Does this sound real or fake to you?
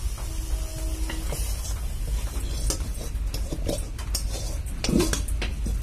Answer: real